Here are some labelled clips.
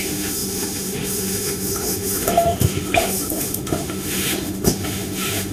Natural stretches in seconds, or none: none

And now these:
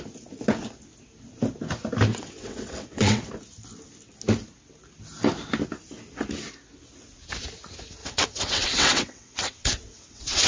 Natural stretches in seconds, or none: 0.0-2.1; 3.3-8.0

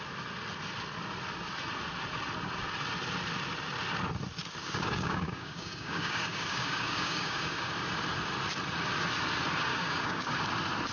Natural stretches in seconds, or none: 0.0-4.6; 7.7-9.7; 10.3-10.9